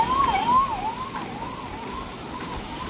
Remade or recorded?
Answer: recorded